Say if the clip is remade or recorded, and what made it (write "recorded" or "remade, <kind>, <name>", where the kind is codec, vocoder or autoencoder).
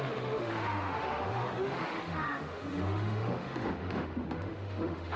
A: remade, autoencoder, DAC-VAE